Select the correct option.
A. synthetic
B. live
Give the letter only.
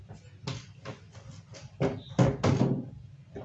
B